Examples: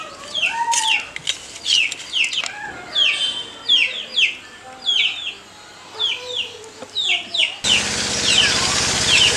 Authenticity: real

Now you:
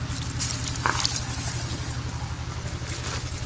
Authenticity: real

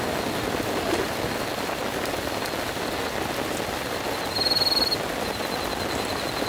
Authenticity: real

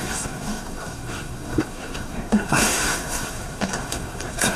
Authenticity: fake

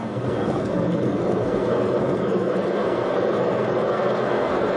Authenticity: fake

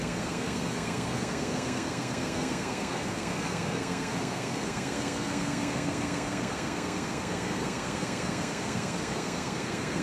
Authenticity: fake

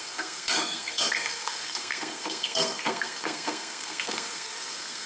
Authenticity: fake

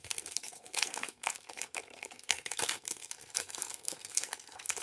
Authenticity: fake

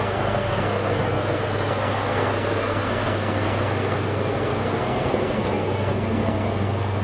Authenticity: fake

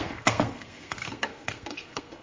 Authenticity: fake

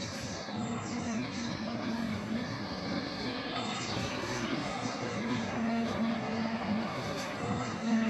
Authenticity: fake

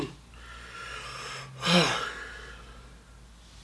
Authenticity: real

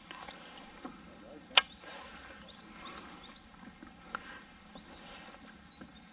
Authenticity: real